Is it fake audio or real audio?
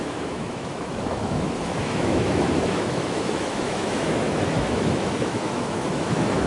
fake